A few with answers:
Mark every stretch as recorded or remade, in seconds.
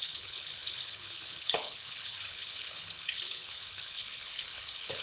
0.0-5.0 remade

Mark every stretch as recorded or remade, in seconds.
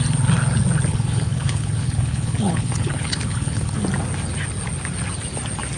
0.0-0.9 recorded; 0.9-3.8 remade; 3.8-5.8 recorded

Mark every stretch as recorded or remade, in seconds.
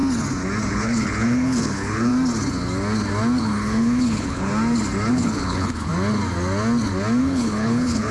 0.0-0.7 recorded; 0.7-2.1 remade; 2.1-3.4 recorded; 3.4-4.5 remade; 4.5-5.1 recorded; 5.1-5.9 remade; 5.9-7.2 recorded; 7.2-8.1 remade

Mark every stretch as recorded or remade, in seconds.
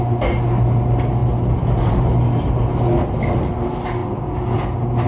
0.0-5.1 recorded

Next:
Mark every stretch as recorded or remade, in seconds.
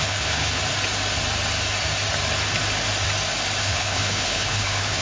0.0-0.6 remade; 0.6-3.6 recorded; 3.6-5.0 remade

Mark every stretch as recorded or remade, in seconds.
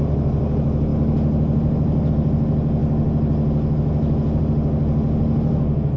0.0-6.0 recorded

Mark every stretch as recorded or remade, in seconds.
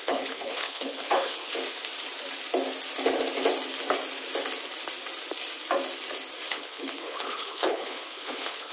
0.0-1.5 remade; 1.5-6.5 recorded; 6.5-8.7 remade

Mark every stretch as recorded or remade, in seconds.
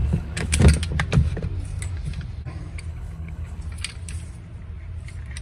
0.0-0.6 remade; 0.6-2.9 recorded; 2.9-3.6 remade; 3.6-5.4 recorded